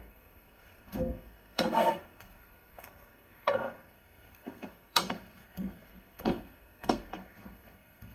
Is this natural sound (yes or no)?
no